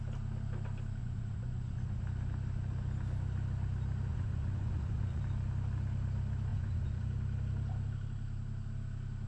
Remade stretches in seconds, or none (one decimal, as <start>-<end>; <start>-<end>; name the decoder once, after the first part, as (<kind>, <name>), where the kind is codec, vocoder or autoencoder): 1.0-2.0 (vocoder, Vocos); 4.1-5.2; 6.5-7.0

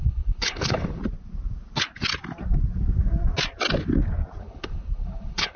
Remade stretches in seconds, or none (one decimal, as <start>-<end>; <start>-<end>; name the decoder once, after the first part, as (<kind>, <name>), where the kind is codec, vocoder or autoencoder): 0.0-1.0 (codec, HILCodec); 4.4-5.6

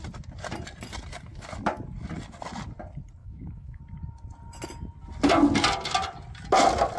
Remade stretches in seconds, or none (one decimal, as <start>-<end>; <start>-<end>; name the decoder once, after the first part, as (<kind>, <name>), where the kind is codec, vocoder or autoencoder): 3.2-3.8 (autoencoder, DAC-VAE)

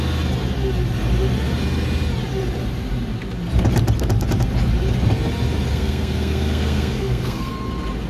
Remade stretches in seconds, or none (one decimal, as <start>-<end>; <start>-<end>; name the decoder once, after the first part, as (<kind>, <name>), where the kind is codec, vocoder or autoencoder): 5.7-7.5 (codec, SNAC)

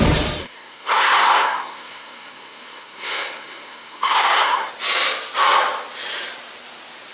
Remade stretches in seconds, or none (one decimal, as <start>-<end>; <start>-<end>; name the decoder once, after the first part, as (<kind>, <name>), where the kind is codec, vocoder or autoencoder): 0.4-4.7 (codec, SNAC)

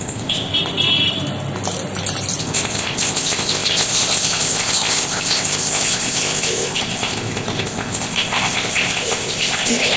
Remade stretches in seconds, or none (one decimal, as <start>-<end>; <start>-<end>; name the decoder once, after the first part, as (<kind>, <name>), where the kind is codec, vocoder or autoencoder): 0.0-0.5 (codec, ZipCodec); 2.4-10.0

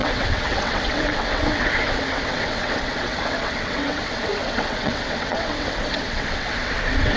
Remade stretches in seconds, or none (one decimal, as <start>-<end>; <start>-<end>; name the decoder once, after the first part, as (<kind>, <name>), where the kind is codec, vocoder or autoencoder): 0.0-7.2 (vocoder, WaveNeXt)

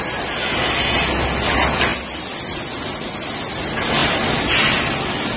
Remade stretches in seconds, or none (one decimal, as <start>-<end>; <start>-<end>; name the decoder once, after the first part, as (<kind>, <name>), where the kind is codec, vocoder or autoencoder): none